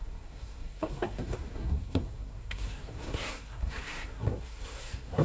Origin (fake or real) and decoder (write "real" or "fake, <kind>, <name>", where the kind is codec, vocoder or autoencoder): fake, codec, SNAC